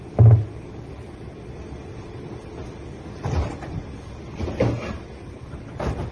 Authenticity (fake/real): real